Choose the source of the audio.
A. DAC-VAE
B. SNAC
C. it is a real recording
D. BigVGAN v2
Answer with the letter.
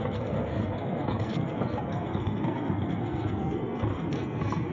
B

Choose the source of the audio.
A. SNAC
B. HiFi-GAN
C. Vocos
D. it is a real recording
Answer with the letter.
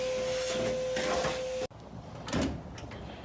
D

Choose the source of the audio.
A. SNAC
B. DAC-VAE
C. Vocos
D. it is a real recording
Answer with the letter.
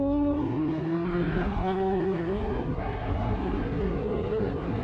A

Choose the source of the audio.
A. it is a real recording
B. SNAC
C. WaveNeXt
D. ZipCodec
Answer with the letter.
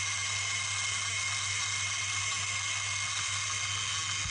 A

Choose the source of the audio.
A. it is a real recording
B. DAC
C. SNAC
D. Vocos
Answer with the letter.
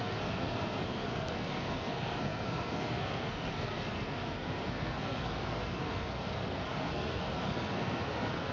C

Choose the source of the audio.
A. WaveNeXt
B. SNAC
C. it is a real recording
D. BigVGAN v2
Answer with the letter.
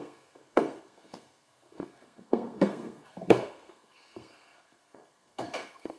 B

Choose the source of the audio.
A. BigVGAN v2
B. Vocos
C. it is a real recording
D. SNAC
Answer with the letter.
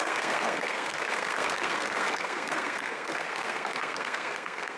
D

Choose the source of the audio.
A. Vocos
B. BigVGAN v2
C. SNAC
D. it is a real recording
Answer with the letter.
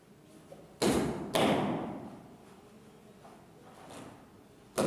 D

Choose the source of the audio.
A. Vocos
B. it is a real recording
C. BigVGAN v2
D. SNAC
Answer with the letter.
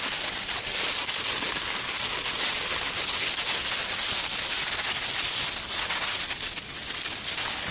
B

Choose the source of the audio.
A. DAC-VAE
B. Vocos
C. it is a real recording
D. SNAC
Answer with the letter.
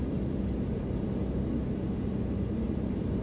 C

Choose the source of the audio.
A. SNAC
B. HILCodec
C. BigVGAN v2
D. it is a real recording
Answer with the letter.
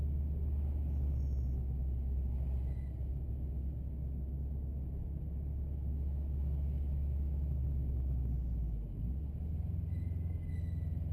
D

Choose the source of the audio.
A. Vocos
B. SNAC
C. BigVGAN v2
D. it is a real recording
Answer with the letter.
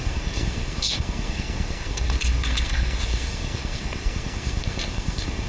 B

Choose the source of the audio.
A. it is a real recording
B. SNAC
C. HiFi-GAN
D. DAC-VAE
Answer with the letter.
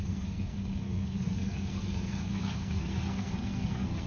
B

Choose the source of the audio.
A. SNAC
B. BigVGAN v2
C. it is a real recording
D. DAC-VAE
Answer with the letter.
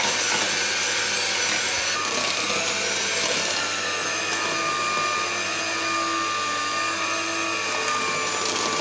C